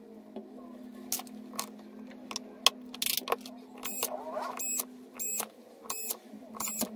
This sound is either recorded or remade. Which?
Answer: recorded